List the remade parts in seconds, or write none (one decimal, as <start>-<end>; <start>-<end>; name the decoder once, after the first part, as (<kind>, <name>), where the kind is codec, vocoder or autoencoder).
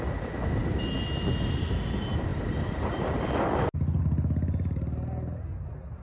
none